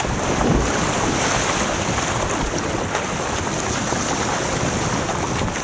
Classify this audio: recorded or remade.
recorded